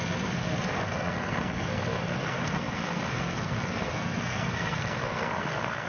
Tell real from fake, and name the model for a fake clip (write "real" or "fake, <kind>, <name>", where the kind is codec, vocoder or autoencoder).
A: fake, codec, SNAC